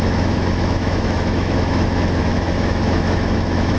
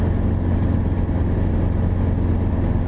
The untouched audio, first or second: second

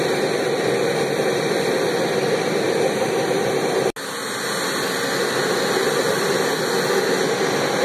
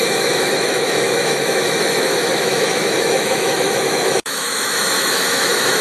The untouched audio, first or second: first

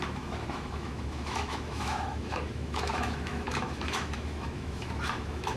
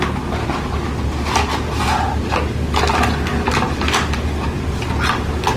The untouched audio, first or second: second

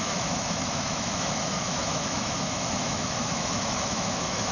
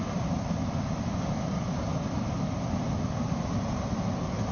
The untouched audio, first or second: second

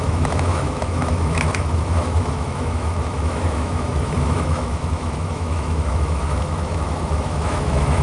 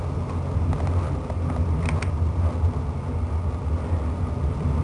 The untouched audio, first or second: second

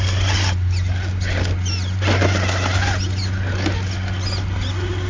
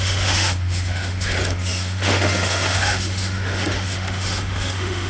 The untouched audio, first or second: first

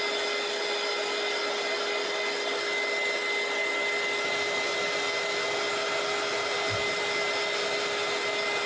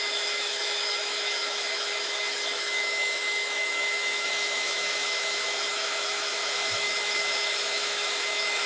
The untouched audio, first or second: first